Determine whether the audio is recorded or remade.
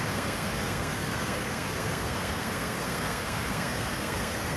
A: remade